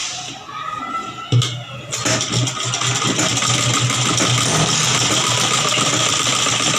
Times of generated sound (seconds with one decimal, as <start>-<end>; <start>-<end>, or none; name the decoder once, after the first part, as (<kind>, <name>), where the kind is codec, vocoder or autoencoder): none